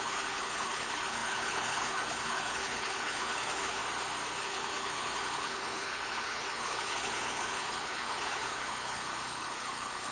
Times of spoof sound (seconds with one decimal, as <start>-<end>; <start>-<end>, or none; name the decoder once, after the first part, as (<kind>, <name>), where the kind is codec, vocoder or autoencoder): 0.0-3.8 (codec, HILCodec); 4.4-10.1